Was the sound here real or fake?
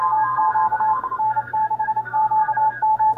fake